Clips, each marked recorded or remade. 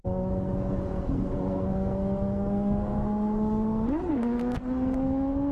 remade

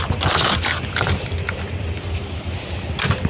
recorded